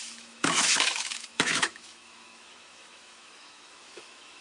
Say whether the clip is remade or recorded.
remade